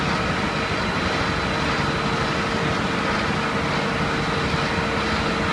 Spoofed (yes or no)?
no